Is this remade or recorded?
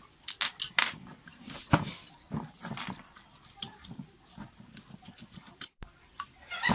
recorded